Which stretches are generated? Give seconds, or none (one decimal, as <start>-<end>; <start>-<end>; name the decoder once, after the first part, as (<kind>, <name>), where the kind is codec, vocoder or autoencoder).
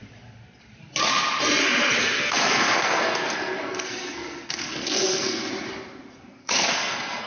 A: 2.0-5.5 (codec, SNAC); 6.4-7.3